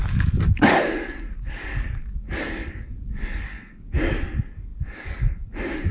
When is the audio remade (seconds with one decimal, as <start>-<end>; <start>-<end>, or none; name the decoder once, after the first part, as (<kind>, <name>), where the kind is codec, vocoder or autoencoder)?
0.0-5.9 (codec, DAC)